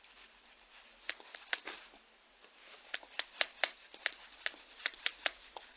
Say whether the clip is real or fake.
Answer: real